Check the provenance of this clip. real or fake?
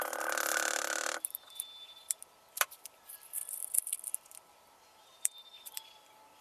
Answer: fake